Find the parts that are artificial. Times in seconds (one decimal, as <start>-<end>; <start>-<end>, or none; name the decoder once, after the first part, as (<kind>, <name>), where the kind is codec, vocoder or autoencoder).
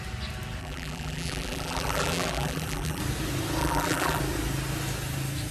0.6-3.0 (vocoder, BigVGAN v2); 3.6-4.2